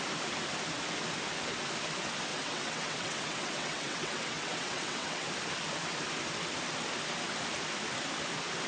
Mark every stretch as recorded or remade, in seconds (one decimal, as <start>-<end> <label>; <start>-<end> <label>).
0.0-2.3 recorded; 2.3-5.3 remade; 5.3-8.7 recorded